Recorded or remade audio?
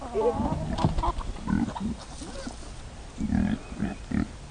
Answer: recorded